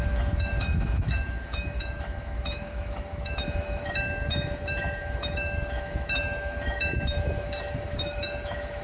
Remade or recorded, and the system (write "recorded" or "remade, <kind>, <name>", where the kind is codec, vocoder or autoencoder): remade, autoencoder, DAC-VAE